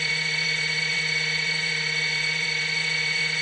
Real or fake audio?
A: fake